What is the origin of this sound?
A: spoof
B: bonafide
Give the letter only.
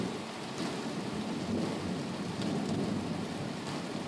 B